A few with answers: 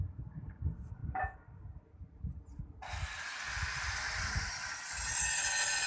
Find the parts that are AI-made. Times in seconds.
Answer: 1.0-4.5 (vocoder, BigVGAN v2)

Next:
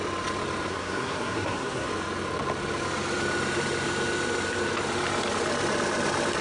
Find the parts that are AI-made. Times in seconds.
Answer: 0.7-1.9 (codec, SNAC)

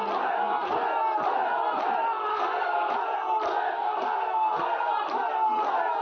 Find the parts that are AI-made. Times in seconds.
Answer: 2.3-2.9 (codec, SNAC); 3.5-4.9

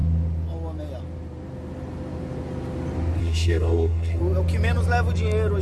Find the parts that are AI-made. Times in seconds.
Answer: 3.2-4.2 (codec, SNAC)